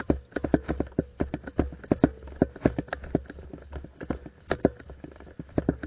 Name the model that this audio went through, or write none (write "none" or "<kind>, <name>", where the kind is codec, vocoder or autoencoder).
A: none